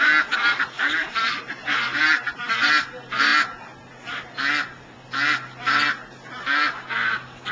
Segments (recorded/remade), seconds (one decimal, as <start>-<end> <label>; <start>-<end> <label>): 0.0-7.5 recorded